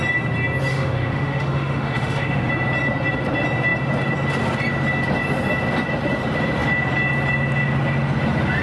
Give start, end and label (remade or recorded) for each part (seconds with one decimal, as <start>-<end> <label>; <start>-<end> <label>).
0.0-0.7 recorded; 0.7-2.5 remade; 2.5-8.6 recorded